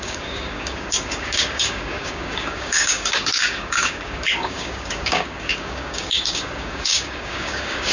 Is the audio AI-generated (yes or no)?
yes